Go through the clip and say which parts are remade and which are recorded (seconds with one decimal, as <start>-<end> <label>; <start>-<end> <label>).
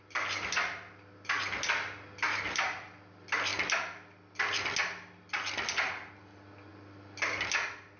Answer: 0.0-8.0 recorded